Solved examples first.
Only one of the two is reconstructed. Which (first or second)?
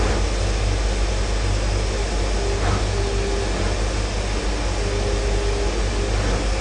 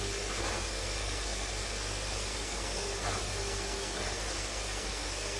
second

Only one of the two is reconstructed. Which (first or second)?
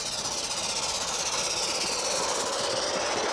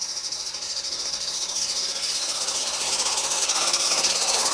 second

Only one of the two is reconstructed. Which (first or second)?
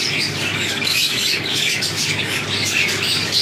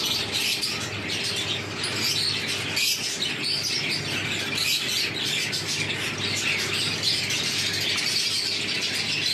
first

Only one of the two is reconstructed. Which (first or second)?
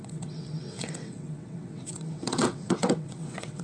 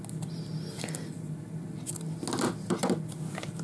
first